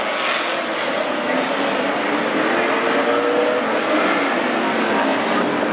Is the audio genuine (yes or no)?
yes